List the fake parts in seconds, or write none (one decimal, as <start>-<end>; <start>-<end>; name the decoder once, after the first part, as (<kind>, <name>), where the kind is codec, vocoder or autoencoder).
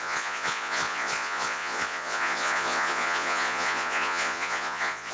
0.0-5.1 (vocoder, Vocos)